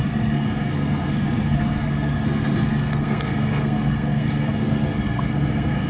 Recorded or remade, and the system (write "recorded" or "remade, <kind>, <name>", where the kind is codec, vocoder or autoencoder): remade, codec, SNAC